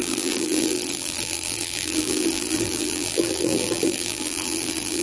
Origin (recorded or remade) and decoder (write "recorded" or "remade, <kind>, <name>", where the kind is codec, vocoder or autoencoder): remade, vocoder, BigVGAN v2